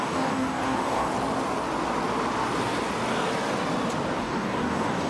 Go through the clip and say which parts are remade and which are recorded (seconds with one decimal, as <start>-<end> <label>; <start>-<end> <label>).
0.0-1.1 remade; 1.1-4.2 recorded; 4.2-5.1 remade